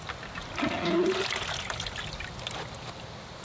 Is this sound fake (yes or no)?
no